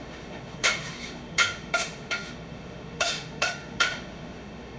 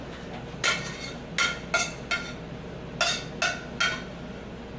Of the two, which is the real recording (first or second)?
second